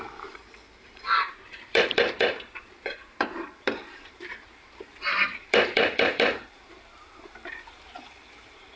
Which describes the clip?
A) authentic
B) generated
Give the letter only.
B